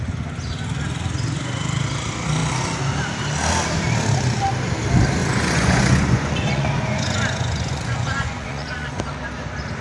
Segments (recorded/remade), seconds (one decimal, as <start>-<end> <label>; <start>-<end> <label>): 0.0-5.2 recorded; 5.2-9.0 remade; 9.0-9.8 recorded